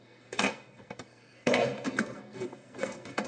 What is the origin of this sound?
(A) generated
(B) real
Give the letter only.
A